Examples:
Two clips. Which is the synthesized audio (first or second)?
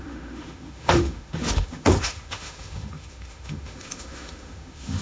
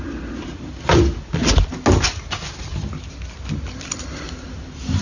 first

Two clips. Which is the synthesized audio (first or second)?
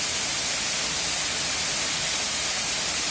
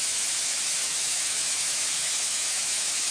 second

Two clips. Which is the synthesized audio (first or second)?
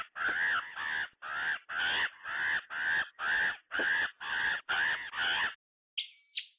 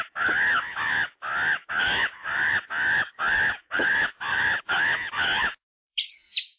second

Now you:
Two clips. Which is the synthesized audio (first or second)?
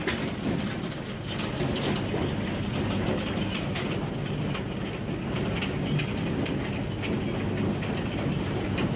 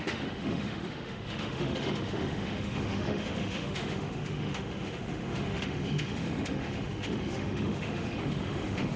second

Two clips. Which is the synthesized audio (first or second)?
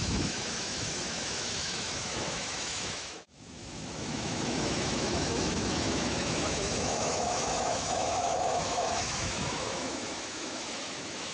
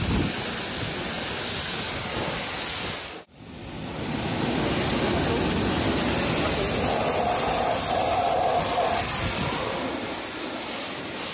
first